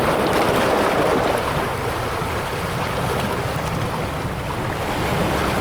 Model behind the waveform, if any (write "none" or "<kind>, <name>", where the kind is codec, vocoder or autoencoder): none